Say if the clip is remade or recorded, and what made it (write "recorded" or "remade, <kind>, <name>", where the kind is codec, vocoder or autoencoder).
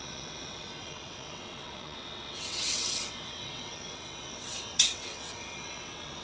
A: remade, vocoder, WaveNeXt